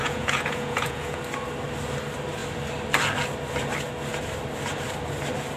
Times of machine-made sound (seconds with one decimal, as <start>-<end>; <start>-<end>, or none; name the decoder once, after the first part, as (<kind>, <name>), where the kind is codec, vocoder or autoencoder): 0.0-1.2 (vocoder, Vocos)